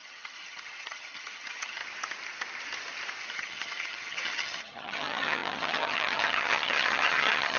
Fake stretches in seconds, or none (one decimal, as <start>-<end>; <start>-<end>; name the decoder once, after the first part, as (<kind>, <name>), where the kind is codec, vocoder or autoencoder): 0.0-1.8 (vocoder, HiFi-GAN); 3.2-7.6